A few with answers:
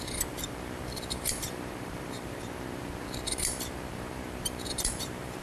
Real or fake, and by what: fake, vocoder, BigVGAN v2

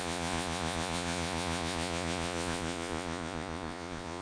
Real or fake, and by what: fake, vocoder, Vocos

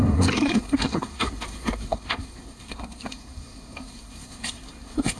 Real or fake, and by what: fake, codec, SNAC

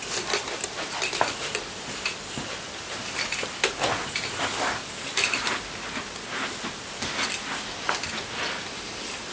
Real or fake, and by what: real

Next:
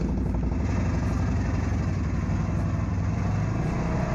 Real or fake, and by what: real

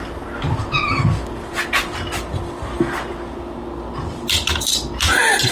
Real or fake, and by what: real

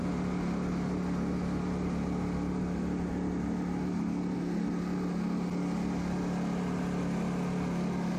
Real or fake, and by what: real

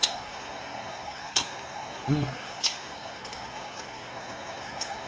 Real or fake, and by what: fake, codec, SNAC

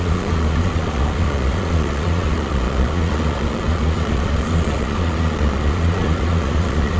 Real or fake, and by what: fake, vocoder, Vocos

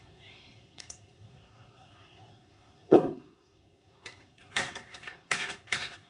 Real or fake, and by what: fake, codec, SNAC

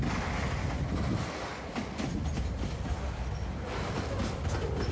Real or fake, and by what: real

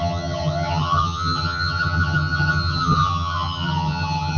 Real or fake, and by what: fake, vocoder, HiFi-GAN